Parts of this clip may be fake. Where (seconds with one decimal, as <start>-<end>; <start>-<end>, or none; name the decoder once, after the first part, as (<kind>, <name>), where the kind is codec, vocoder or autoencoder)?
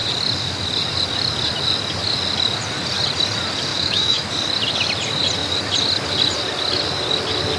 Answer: 3.7-4.3 (autoencoder, DAC-VAE)